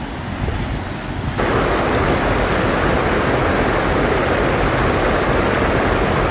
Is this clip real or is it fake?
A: real